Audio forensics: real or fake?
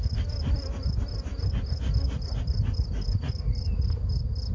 real